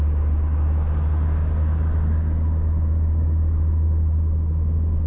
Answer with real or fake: real